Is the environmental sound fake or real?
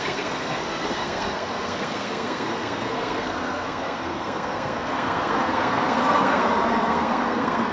fake